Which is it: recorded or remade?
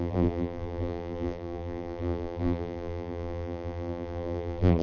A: remade